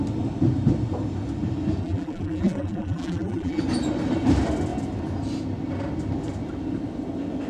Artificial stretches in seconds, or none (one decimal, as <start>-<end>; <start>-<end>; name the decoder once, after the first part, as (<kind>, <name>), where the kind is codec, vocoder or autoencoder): 1.8-3.6 (vocoder, BigVGAN v2)